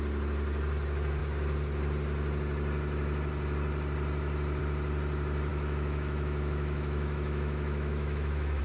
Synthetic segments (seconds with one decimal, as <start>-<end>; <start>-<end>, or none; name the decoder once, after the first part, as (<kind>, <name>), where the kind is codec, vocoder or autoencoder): 5.5-8.6 (autoencoder, DAC-VAE)